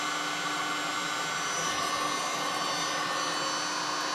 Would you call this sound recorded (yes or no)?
yes